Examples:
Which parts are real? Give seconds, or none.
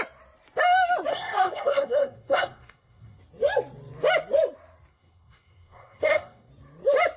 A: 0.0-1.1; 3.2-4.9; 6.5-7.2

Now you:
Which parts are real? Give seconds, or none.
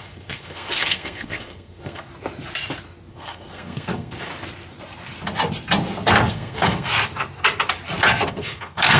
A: 2.1-3.1; 4.3-6.3; 6.9-8.3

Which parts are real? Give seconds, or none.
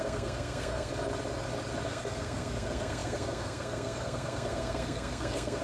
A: 0.9-1.9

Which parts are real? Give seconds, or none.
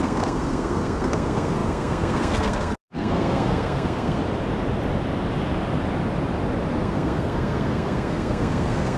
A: 4.2-6.8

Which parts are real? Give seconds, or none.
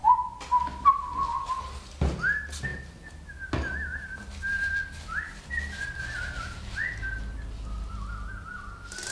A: 0.0-9.1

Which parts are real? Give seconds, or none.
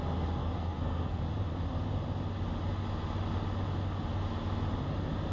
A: 0.0-0.4; 1.2-5.3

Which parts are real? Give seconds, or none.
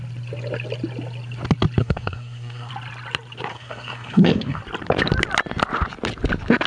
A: 0.0-1.8; 2.7-3.5; 4.6-6.7